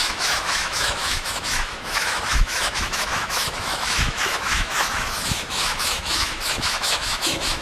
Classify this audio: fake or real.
fake